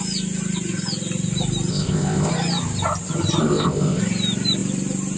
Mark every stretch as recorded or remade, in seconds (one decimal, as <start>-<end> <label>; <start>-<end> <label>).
0.0-1.7 recorded; 1.7-2.3 remade; 2.3-3.4 recorded; 3.4-4.0 remade; 4.0-5.2 recorded